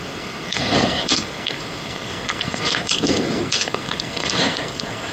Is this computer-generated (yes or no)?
yes